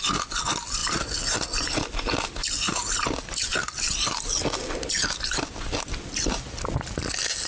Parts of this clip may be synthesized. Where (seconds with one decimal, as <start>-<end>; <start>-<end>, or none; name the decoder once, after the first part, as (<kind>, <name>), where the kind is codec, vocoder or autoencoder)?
none